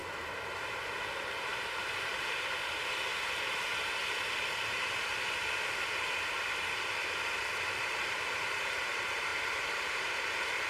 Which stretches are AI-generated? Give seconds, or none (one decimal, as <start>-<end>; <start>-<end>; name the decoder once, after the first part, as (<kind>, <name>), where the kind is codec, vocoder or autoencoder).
1.1-3.1 (vocoder, BigVGAN v2); 7.8-10.7